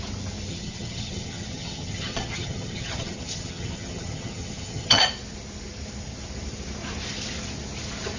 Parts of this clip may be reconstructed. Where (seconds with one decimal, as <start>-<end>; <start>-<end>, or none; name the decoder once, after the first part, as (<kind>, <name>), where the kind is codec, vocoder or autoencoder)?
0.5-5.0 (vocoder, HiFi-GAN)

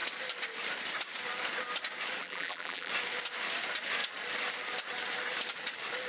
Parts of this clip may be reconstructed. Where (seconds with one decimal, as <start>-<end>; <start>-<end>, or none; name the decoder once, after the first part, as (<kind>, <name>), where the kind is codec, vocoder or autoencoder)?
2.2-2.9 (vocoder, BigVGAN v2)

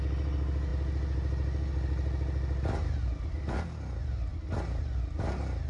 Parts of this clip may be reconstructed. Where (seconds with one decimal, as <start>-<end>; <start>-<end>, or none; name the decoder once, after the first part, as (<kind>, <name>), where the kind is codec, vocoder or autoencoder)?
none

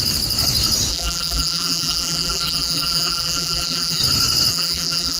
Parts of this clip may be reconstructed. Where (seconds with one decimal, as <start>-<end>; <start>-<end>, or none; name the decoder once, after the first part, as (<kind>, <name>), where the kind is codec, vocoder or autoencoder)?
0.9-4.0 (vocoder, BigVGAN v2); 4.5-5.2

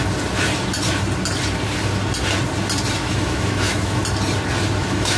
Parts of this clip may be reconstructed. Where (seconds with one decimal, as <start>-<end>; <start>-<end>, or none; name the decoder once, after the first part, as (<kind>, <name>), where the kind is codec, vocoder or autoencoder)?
3.1-4.0 (autoencoder, DAC-VAE); 4.8-5.2